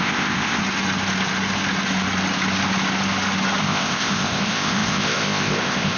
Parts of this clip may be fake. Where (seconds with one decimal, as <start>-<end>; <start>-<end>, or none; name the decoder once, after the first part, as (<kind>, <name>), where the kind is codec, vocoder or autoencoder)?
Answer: 0.0-0.6 (codec, ZipCodec); 3.6-6.0